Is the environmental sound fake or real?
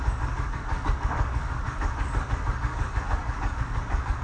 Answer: fake